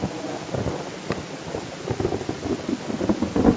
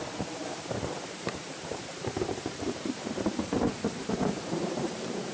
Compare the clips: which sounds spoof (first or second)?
second